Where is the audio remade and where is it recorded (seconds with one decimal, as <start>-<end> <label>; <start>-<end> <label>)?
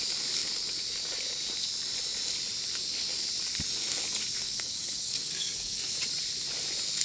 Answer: 0.0-4.4 recorded; 4.4-5.9 remade; 5.9-7.0 recorded